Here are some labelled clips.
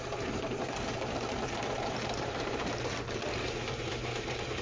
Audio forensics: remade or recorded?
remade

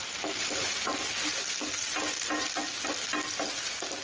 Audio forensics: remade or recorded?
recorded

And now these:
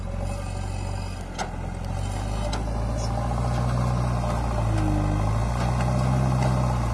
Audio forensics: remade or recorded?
recorded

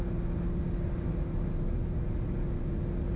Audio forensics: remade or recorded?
recorded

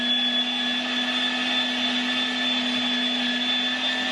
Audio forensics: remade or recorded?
recorded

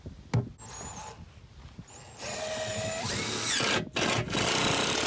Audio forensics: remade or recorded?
recorded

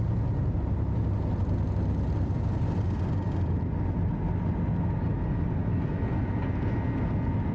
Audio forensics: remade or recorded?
recorded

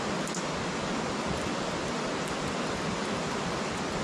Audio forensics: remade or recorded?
recorded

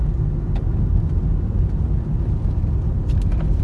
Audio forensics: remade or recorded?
recorded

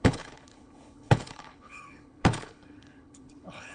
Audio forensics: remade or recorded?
remade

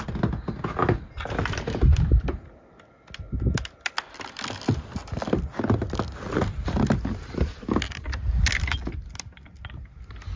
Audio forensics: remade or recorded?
recorded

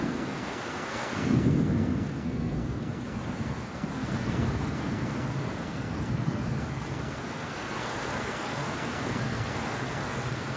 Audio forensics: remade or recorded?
remade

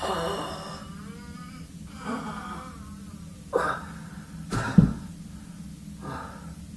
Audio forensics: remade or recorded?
remade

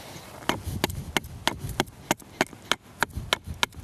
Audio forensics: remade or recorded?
recorded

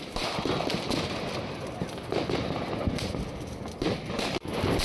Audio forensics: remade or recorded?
recorded